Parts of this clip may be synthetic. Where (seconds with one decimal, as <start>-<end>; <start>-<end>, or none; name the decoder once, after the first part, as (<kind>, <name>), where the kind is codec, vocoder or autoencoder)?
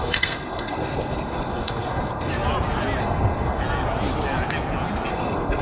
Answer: 0.0-2.3 (codec, SNAC); 3.0-3.6; 5.1-5.6